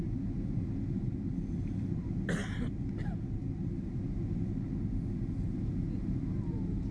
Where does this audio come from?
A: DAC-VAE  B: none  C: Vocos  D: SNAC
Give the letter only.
B